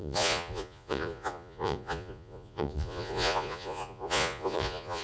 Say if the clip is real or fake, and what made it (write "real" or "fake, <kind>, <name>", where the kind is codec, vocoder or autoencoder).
fake, vocoder, Vocos